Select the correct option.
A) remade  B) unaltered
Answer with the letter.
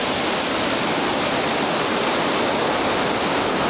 B